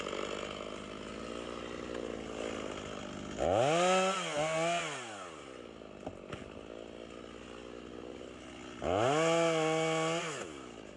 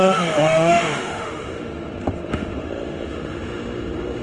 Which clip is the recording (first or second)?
first